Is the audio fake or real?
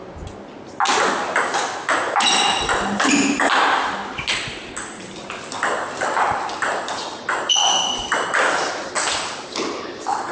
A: real